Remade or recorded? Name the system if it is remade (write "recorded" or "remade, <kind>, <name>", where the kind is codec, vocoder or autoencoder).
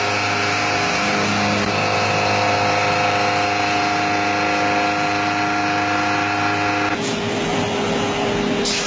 recorded